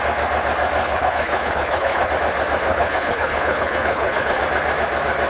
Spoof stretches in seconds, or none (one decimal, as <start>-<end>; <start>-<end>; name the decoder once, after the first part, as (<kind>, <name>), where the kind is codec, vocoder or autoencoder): 0.8-2.1 (codec, HILCodec); 2.7-4.4